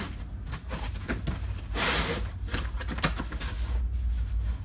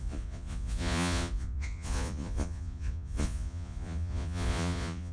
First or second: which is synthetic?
second